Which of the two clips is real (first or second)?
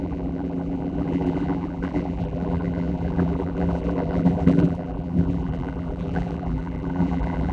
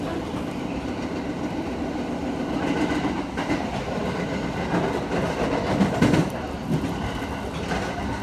second